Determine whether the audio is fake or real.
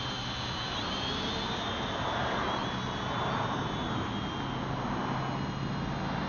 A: real